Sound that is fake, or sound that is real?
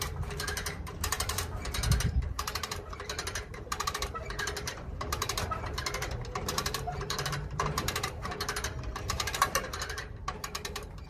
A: fake